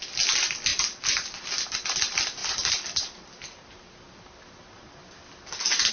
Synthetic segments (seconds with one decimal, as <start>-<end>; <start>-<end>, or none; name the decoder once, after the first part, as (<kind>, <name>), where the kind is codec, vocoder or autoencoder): none